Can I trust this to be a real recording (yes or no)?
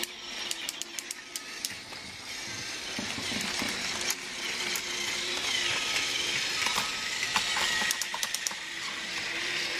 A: no